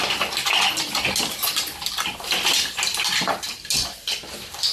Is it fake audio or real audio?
real